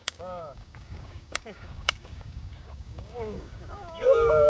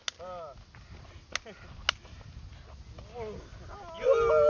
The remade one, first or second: first